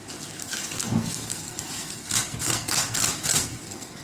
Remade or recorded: remade